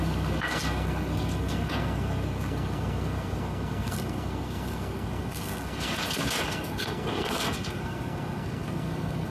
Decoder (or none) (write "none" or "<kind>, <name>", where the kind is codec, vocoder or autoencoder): codec, SNAC